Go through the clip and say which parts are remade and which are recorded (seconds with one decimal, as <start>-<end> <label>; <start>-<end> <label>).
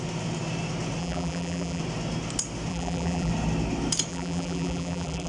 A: 0.0-1.0 recorded; 1.0-1.8 remade; 1.8-2.7 recorded; 2.7-3.3 remade; 3.3-4.1 recorded; 4.1-5.3 remade